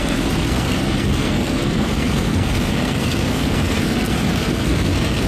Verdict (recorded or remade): remade